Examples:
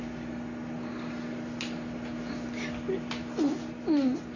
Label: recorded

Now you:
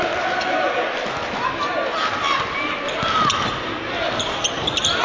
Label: recorded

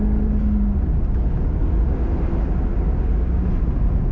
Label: recorded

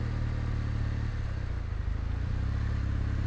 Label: recorded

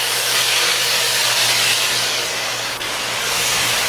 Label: remade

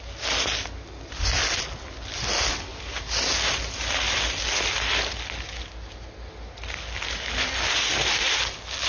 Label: recorded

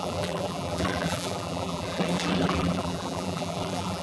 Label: remade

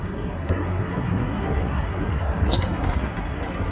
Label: remade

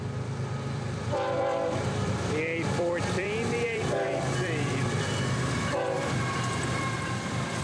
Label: remade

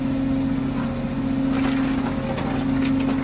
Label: recorded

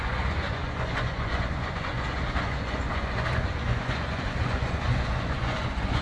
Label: remade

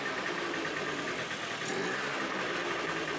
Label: recorded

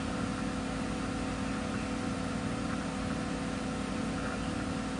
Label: recorded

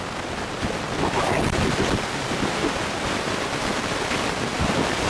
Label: recorded